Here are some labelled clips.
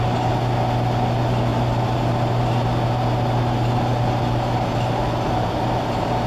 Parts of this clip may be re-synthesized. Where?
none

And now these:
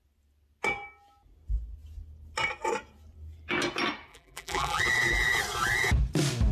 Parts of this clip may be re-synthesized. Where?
4.1-4.8 (vocoder, BigVGAN v2)

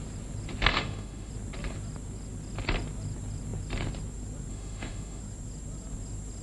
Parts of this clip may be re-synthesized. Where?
0.7-1.3 (autoencoder, DAC-VAE); 4.5-5.2

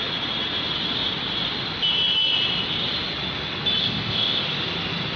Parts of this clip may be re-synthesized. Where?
3.8-4.4 (codec, ZipCodec)

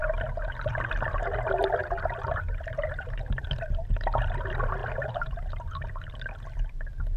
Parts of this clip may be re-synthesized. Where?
4.8-6.1 (vocoder, BigVGAN v2)